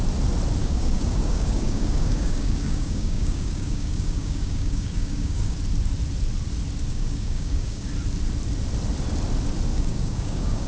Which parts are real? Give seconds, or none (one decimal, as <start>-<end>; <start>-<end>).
0.0-0.6; 5.6-6.9; 7.9-9.7